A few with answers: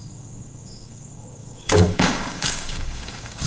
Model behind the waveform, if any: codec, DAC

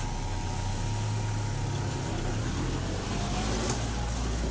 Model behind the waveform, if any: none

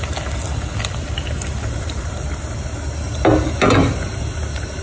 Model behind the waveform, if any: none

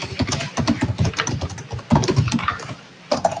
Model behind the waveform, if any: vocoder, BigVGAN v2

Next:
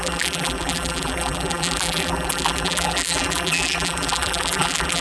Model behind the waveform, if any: vocoder, BigVGAN v2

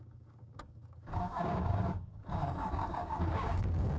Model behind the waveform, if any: codec, DAC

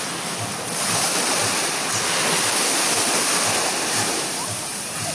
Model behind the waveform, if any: none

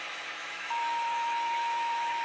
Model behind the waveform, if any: autoencoder, DAC-VAE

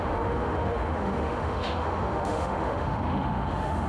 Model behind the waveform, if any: autoencoder, DAC-VAE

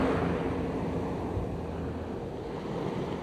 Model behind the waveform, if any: none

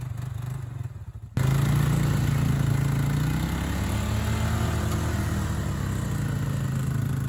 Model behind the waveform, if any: none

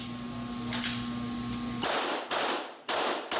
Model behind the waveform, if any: none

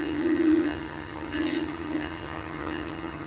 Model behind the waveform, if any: vocoder, HiFi-GAN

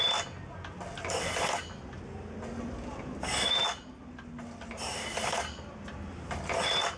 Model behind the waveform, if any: none